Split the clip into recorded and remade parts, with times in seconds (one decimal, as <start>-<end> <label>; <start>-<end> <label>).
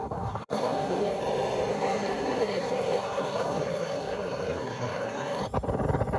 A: 0.0-1.2 remade; 1.2-1.7 recorded; 1.7-5.4 remade; 5.4-6.2 recorded